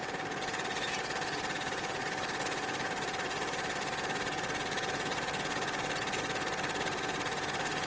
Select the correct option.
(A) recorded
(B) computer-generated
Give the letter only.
B